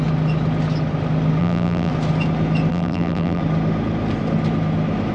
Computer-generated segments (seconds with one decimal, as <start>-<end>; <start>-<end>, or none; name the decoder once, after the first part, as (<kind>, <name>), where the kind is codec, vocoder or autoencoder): 1.4-1.9 (vocoder, BigVGAN v2); 2.7-3.4